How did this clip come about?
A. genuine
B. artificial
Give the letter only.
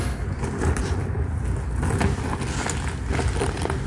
A